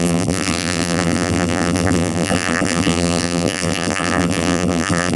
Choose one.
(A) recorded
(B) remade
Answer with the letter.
B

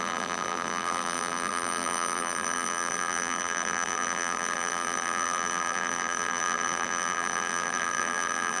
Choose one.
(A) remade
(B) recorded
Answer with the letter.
A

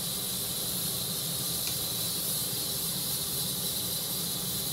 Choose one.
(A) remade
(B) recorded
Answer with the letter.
B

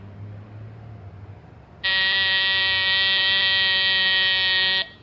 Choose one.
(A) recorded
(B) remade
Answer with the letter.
A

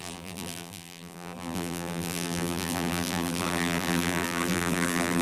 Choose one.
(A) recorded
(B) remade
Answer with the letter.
B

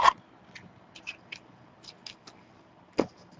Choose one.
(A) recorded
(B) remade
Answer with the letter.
A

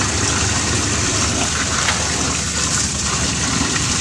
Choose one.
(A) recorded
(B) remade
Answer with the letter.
B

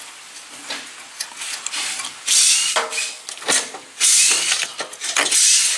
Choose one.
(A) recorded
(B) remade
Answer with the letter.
A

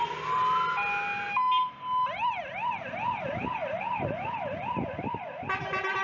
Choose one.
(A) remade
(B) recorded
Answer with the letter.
B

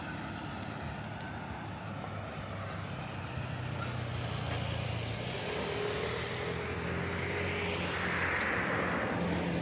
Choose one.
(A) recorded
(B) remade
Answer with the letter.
A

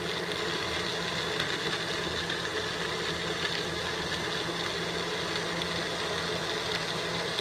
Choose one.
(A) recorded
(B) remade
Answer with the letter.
A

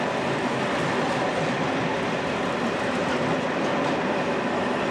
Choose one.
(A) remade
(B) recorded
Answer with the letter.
B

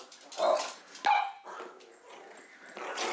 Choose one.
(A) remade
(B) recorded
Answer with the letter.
B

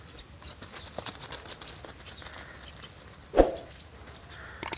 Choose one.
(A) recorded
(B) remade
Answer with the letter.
A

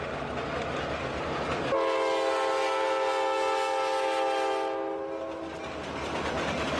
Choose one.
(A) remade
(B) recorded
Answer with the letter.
B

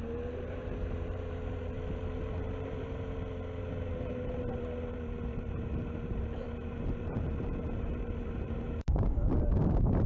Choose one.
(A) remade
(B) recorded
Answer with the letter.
A